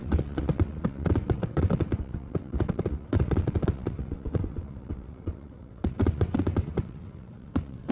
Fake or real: fake